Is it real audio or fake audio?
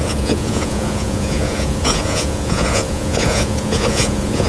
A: fake